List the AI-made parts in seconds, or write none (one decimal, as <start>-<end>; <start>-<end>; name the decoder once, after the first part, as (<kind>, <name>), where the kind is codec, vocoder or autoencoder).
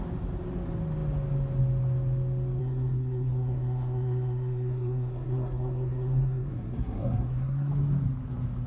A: 2.6-7.7 (codec, SNAC)